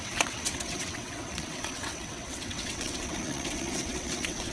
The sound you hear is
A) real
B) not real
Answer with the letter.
B